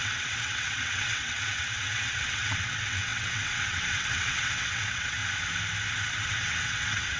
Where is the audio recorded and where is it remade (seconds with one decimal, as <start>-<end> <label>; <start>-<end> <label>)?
0.0-5.2 remade; 5.2-6.1 recorded; 6.1-7.2 remade